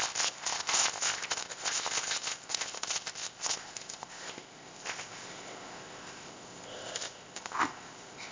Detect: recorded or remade remade